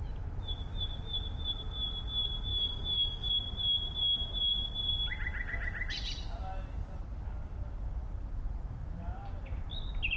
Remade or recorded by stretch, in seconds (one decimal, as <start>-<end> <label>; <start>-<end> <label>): 0.0-2.5 recorded; 2.5-3.3 remade; 3.3-10.2 recorded